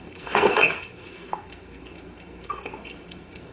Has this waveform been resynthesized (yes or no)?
yes